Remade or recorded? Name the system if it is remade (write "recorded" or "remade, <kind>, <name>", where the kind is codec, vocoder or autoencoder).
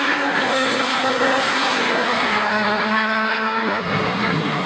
remade, codec, SNAC